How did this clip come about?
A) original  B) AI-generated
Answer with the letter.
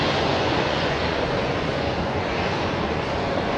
B